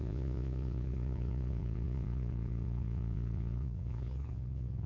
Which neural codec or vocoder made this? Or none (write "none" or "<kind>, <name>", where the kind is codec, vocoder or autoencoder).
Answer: vocoder, Vocos